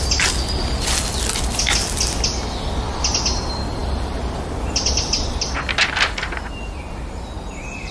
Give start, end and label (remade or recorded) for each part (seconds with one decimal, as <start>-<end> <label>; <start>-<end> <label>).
0.0-7.9 recorded